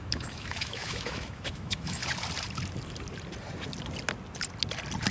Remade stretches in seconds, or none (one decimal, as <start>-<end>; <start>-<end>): 0.0-2.0